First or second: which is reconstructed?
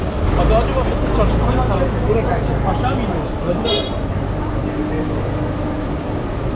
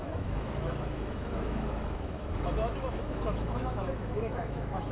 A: second